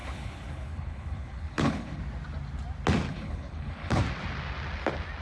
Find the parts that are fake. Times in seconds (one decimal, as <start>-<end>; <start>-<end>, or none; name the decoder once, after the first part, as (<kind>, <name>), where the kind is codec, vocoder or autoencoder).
0.0-2.0 (codec, HILCodec); 3.1-4.0

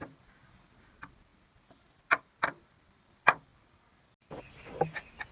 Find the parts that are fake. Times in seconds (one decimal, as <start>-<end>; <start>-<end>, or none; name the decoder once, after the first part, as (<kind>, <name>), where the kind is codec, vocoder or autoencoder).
none

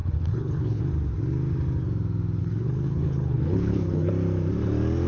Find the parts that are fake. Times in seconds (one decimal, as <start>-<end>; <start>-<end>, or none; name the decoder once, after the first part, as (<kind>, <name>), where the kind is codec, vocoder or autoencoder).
0.0-0.8 (codec, HILCodec); 2.4-4.1

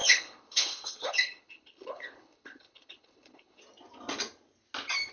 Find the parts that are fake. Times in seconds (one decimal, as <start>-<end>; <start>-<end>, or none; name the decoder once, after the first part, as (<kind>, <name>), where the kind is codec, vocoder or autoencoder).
0.0-3.6 (codec, HILCodec)

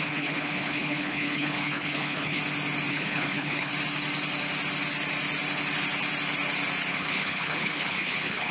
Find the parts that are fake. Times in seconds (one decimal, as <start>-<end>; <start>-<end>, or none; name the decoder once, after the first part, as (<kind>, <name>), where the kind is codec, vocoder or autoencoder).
0.0-2.4 (codec, HILCodec); 2.9-3.7; 6.9-8.5

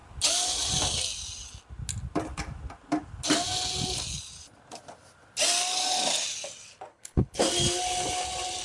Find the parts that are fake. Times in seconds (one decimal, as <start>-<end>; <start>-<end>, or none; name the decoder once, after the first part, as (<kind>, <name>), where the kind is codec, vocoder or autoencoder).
6.9-7.4 (codec, HILCodec)

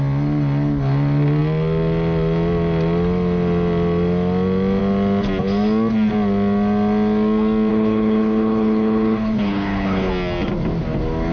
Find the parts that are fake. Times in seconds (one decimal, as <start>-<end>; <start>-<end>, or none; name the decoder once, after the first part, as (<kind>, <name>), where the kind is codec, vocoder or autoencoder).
7.7-10.1 (codec, HILCodec)

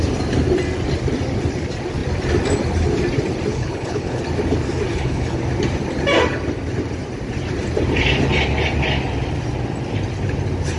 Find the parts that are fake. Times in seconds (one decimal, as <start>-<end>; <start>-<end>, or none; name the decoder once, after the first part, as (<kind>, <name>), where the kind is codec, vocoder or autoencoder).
3.5-4.2 (codec, HILCodec); 4.9-5.4